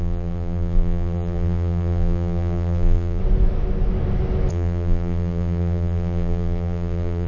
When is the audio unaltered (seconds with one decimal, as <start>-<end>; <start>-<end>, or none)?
3.2-4.5